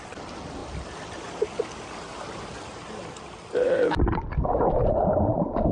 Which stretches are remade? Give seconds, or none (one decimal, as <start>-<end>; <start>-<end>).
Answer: none